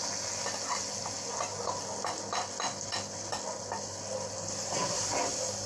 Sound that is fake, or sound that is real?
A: real